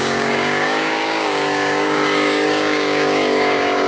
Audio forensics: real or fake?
fake